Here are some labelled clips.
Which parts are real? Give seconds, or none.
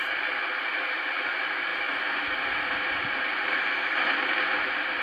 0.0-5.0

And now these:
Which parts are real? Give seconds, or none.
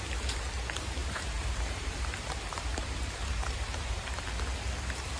0.0-1.0; 4.1-5.2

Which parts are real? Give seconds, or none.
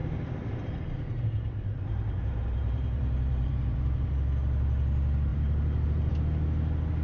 4.1-5.3; 6.1-7.0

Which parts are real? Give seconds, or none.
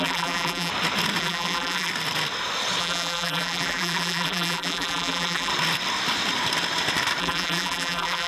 0.7-1.2; 1.9-2.8; 5.5-7.2